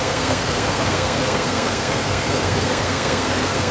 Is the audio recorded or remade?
remade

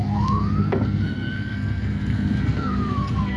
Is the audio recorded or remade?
remade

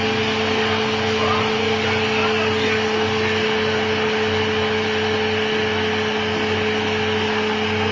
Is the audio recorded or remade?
recorded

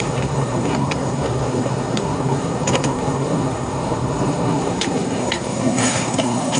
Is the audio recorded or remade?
remade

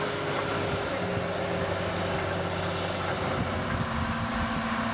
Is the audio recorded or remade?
recorded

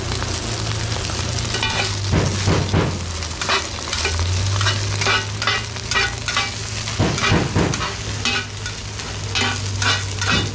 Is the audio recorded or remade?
recorded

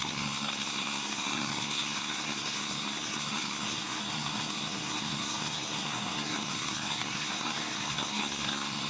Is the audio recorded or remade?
remade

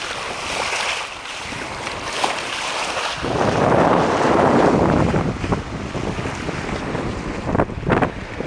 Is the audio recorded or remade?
recorded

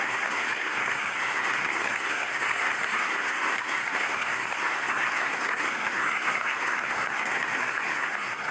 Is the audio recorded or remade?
remade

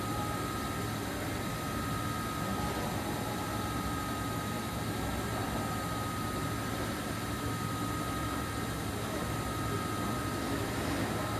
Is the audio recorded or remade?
recorded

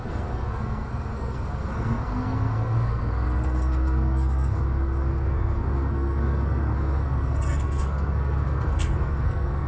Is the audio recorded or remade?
remade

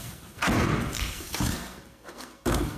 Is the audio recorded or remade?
remade